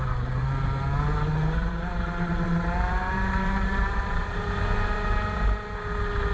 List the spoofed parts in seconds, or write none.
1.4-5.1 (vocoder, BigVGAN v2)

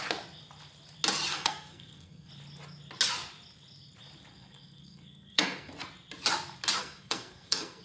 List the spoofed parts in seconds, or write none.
1.3-2.3 (codec, SNAC); 4.3-5.7; 6.8-7.8

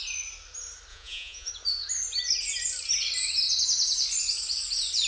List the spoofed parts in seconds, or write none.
0.9-1.5 (vocoder, Vocos)

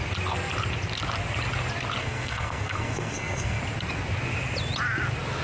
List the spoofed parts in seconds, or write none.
2.0-3.6 (codec, SNAC)